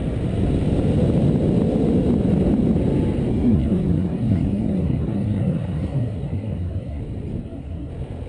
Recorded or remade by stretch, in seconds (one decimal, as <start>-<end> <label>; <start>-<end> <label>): 0.0-3.3 recorded; 3.3-7.0 remade; 7.0-7.4 recorded; 7.4-7.9 remade; 7.9-8.3 recorded